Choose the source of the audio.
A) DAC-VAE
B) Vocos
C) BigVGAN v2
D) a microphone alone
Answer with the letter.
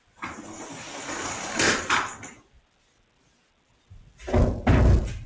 D